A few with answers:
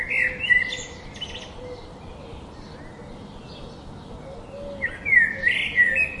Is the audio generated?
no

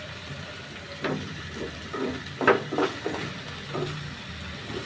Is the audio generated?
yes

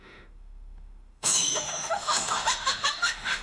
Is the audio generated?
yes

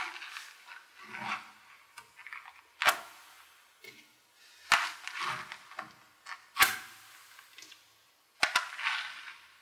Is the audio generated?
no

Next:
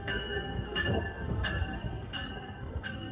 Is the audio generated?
yes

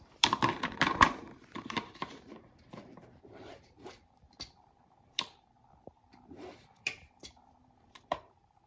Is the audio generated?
yes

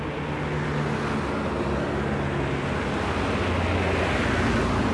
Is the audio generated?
no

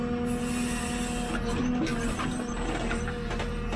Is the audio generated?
no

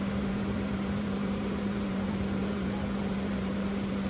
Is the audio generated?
yes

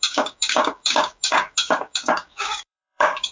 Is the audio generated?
yes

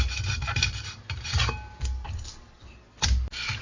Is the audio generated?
no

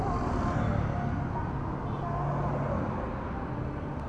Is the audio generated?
no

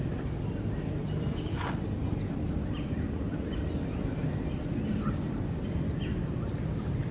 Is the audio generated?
no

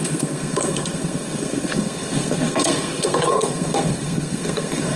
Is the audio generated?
yes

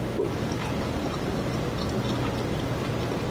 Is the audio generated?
no